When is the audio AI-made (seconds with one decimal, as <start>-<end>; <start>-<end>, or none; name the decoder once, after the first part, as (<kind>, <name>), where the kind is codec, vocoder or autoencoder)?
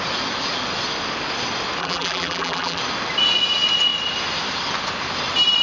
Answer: 1.8-2.8 (vocoder, BigVGAN v2)